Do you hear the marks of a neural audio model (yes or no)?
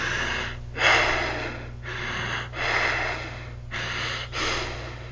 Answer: no